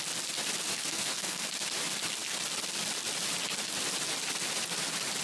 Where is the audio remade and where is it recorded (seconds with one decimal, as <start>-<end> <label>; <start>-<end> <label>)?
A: 0.0-0.7 recorded; 0.7-1.4 remade; 1.4-5.2 recorded